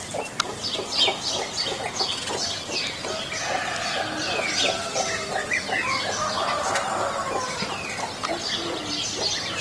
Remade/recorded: recorded